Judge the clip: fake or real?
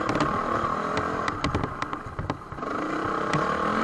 real